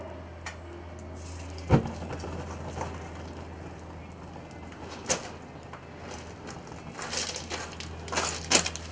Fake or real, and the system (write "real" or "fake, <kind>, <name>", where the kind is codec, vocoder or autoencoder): real